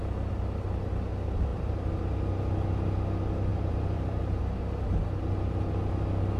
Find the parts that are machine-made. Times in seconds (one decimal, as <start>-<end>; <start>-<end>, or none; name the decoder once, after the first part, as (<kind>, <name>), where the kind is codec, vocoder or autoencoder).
1.5-2.1 (vocoder, BigVGAN v2); 3.5-4.4